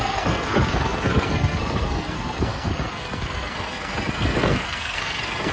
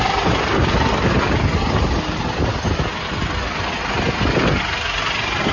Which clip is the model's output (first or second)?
first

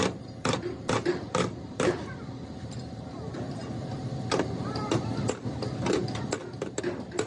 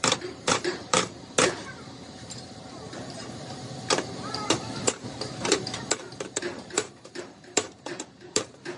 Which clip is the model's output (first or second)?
second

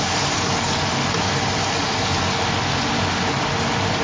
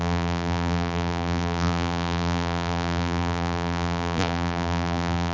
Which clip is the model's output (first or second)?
second